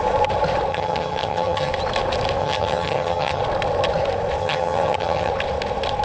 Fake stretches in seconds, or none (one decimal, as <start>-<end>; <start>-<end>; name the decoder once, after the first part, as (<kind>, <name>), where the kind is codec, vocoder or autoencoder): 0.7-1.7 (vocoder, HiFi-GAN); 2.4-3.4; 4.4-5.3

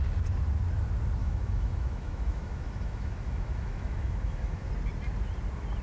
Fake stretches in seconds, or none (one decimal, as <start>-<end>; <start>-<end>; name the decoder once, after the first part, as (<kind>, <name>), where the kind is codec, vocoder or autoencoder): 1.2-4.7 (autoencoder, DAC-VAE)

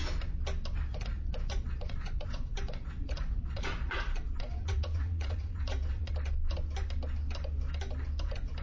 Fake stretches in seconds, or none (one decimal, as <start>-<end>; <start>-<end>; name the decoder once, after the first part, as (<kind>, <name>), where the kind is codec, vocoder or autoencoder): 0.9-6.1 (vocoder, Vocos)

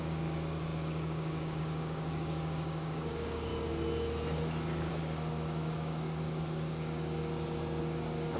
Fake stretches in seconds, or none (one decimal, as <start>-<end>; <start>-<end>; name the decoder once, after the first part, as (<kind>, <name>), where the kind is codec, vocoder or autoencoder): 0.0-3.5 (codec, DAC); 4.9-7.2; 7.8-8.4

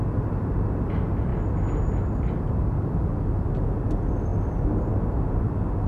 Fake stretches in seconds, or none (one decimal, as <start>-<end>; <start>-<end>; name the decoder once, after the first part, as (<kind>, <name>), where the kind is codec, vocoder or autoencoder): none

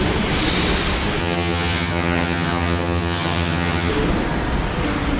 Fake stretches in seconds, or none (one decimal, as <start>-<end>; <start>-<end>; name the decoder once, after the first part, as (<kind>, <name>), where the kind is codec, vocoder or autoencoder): 1.2-3.9 (vocoder, HiFi-GAN)

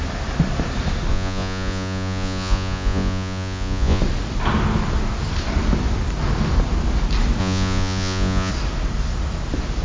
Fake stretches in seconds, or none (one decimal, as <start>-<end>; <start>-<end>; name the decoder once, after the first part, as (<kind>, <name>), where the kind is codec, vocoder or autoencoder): 1.1-4.0 (vocoder, Vocos); 7.4-8.5